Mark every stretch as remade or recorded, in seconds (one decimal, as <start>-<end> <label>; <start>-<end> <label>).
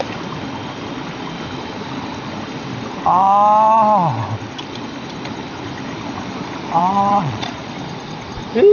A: 0.0-6.8 recorded; 6.8-7.7 remade; 7.7-8.7 recorded